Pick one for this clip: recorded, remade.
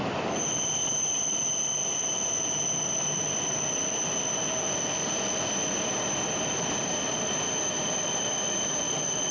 recorded